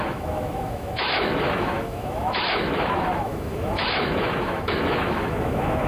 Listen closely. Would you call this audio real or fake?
fake